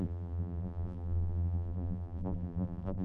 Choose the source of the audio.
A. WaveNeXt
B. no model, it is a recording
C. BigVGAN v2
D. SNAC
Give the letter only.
C